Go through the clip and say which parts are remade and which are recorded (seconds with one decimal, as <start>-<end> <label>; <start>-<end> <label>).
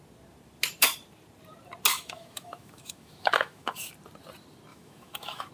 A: 0.0-1.9 recorded; 1.9-3.9 remade; 3.9-4.7 recorded; 4.7-5.5 remade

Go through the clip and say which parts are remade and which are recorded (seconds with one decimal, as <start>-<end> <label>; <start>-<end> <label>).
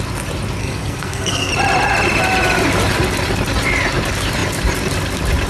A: 0.0-0.6 recorded; 0.6-1.5 remade; 1.5-5.5 recorded